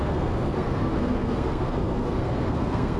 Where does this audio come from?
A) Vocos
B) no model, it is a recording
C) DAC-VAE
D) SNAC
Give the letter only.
D